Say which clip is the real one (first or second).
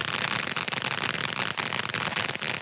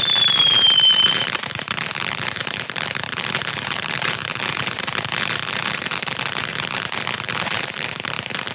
first